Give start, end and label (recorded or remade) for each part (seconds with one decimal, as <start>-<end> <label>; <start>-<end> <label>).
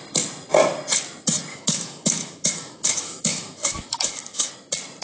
0.0-1.5 recorded; 1.5-4.5 remade; 4.5-5.0 recorded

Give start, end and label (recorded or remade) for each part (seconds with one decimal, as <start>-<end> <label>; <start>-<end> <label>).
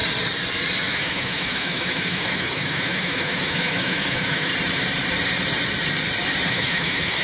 0.0-0.9 recorded; 0.9-4.5 remade; 4.5-6.5 recorded; 6.5-7.2 remade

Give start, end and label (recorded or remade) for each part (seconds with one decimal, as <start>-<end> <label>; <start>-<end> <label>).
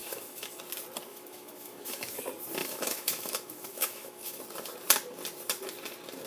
0.0-0.6 remade; 0.6-1.1 recorded; 1.1-2.2 remade; 2.2-2.6 recorded; 2.6-4.4 remade; 4.4-6.3 recorded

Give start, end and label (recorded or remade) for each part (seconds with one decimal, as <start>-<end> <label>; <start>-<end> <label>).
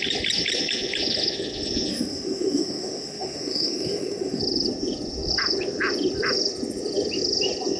0.0-1.9 recorded; 1.9-4.4 remade; 4.4-7.8 recorded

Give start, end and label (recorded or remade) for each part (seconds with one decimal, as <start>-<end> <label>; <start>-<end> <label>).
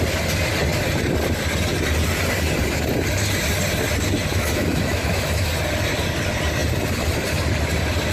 0.0-4.3 recorded; 4.3-5.5 remade; 5.5-8.1 recorded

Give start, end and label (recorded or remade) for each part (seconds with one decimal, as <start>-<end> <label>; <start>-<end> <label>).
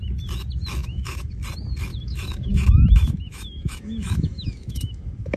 0.0-0.8 recorded; 0.8-1.4 remade; 1.4-1.9 recorded; 1.9-5.4 remade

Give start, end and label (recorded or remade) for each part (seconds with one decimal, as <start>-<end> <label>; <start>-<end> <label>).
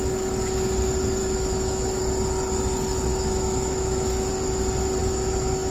0.0-1.2 recorded; 1.2-2.0 remade; 2.0-3.1 recorded; 3.1-4.3 remade; 4.3-5.0 recorded; 5.0-5.7 remade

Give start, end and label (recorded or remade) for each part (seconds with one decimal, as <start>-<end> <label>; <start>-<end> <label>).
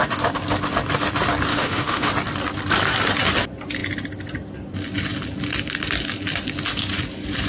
0.0-1.5 recorded; 1.5-2.1 remade; 2.1-7.5 recorded